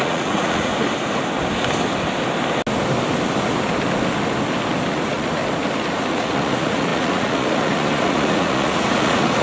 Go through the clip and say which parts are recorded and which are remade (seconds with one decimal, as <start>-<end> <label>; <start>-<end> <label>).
0.0-0.7 remade; 0.7-4.9 recorded; 4.9-5.4 remade; 5.4-6.1 recorded; 6.1-9.4 remade